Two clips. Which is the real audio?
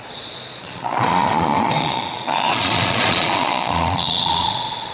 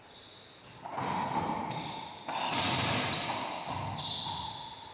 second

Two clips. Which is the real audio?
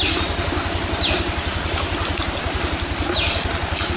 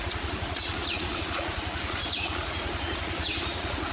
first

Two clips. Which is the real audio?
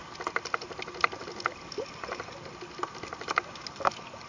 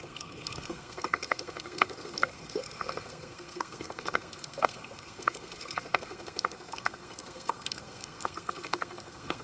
first